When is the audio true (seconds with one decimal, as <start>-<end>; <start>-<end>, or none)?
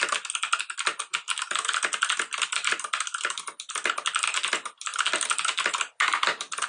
0.0-6.7